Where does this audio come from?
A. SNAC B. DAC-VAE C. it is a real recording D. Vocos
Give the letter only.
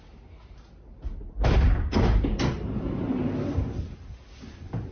C